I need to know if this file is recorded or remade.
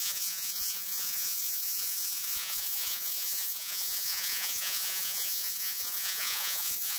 remade